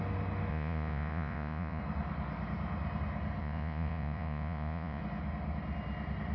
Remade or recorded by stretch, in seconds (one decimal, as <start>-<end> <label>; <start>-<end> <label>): 0.0-0.5 recorded; 0.5-1.8 remade; 1.8-3.4 recorded; 3.4-5.0 remade; 5.0-6.3 recorded